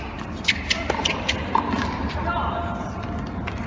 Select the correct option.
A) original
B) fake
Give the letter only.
A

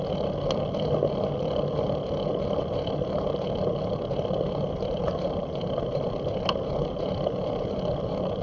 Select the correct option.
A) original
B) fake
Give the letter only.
A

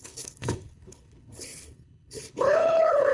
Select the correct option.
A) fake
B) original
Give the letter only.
A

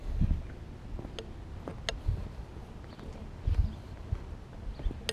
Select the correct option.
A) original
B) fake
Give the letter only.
A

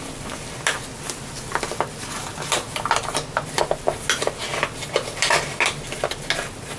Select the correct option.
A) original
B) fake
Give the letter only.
A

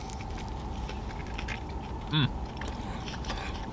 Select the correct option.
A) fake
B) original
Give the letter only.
B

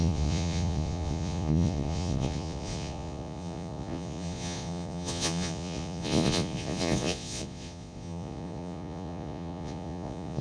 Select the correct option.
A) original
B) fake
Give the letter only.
B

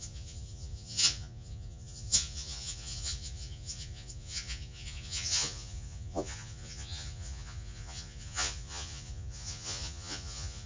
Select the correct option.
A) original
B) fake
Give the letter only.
B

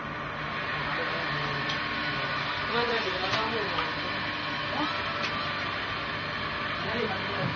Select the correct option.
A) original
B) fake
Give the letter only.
A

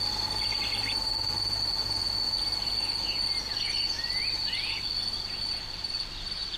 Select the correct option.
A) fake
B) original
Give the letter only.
B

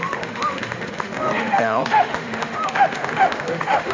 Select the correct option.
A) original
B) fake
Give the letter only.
B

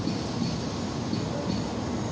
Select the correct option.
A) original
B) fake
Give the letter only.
A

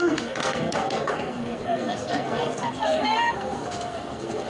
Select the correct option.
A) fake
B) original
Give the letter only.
A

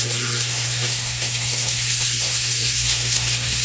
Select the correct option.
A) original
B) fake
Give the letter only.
B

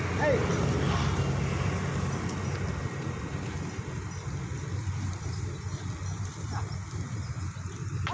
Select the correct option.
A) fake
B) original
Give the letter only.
B